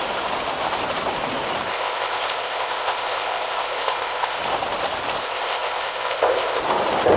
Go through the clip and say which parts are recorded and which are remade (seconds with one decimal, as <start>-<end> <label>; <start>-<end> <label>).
0.0-1.7 recorded; 1.7-4.4 remade; 4.4-5.2 recorded; 5.2-6.6 remade; 6.6-7.2 recorded